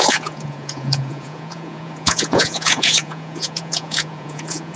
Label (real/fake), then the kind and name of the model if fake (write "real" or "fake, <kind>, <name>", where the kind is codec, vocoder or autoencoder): fake, vocoder, Vocos